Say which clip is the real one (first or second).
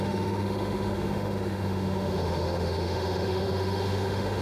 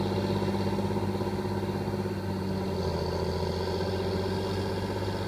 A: second